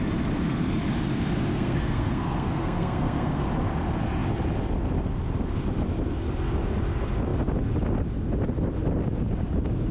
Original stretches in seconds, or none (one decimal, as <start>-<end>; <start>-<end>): 0.0-1.5; 3.4-9.9